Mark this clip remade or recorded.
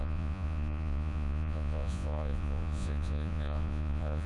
remade